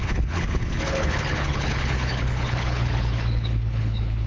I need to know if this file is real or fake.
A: fake